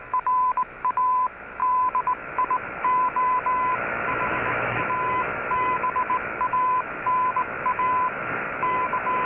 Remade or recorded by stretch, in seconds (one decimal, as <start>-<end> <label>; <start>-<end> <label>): 0.0-9.3 remade